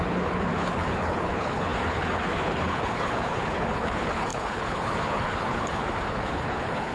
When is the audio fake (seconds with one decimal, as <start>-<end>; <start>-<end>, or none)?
0.0-6.9